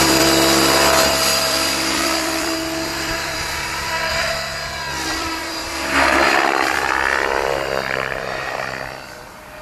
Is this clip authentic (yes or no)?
no